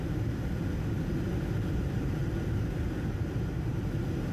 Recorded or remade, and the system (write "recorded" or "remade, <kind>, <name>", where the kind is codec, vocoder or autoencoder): recorded